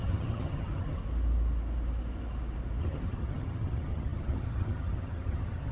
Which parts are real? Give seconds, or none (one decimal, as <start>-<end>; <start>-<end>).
1.0-2.8